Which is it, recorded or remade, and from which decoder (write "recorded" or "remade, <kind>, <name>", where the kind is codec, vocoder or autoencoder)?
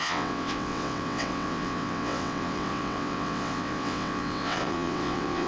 remade, vocoder, WaveNeXt